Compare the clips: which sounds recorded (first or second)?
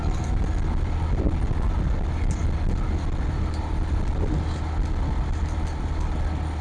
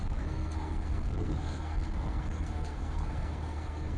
first